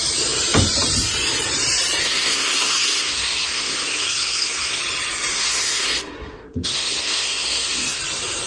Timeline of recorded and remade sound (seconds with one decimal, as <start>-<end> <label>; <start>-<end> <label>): 0.0-2.0 recorded; 2.0-4.8 remade; 4.8-5.3 recorded; 5.3-8.0 remade; 8.0-8.5 recorded

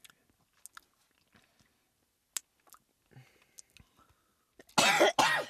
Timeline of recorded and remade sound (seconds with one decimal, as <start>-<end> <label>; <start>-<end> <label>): 0.0-5.5 recorded

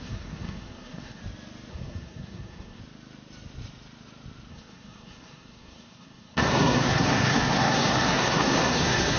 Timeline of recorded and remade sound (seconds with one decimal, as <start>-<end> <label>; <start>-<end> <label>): 0.0-1.2 remade; 1.2-1.7 recorded; 1.7-2.8 remade; 2.8-4.5 recorded; 4.5-9.2 remade

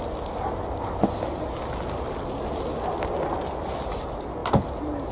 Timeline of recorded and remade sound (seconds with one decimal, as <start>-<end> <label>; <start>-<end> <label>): 0.0-5.1 recorded

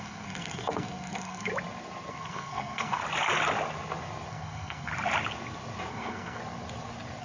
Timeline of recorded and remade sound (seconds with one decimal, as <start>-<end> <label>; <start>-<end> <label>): 0.0-1.5 remade; 1.5-2.1 recorded; 2.1-3.0 remade; 3.0-4.3 recorded; 4.3-4.9 remade; 4.9-5.9 recorded; 5.9-6.4 remade; 6.4-7.2 recorded

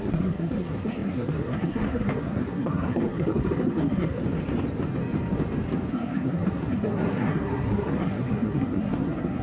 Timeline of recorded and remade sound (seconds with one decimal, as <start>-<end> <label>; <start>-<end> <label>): 0.0-4.2 remade; 4.2-5.9 recorded; 5.9-9.4 remade

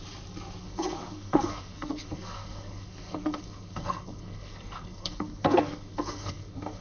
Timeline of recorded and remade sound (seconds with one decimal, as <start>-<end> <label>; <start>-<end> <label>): 0.0-0.6 recorded; 0.6-6.8 remade

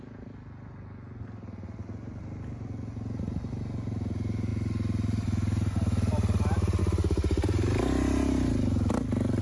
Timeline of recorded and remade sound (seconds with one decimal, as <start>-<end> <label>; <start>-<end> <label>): 0.0-9.4 recorded